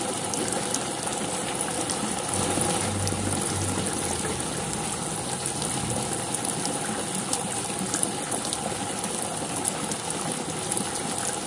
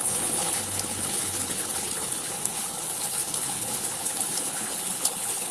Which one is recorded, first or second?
first